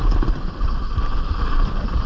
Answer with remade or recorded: remade